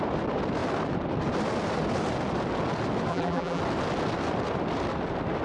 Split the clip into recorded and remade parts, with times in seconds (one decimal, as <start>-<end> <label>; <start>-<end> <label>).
0.0-3.1 recorded; 3.1-3.6 remade; 3.6-5.4 recorded